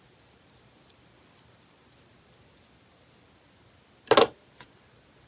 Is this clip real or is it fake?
real